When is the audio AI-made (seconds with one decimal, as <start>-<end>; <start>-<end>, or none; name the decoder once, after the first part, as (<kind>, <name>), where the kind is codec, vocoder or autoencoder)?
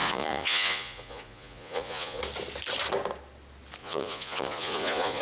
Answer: 0.0-2.2 (vocoder, Vocos); 3.8-5.2